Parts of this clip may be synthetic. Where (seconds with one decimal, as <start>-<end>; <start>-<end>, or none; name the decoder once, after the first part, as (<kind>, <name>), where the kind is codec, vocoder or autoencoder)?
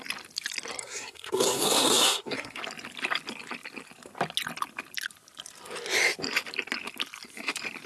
0.8-2.6 (codec, SNAC)